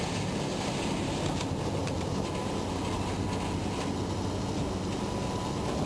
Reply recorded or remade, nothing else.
recorded